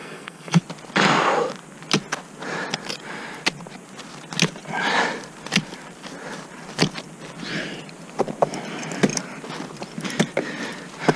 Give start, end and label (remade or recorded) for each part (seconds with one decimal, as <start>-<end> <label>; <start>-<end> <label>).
0.0-0.6 remade; 0.6-11.2 recorded